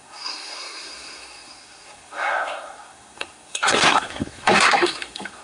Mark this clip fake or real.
fake